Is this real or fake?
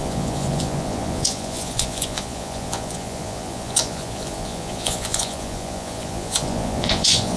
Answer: fake